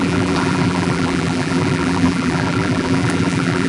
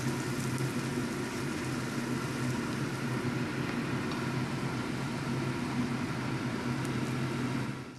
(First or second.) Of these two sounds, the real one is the second